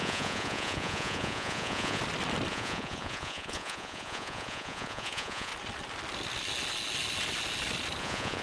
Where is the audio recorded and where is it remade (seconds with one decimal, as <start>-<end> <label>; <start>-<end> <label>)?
0.0-2.0 remade; 2.0-2.5 recorded; 2.5-5.5 remade; 5.5-8.0 recorded; 8.0-8.4 remade